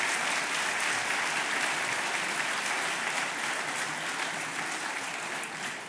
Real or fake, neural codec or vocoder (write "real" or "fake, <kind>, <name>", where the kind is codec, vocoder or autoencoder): real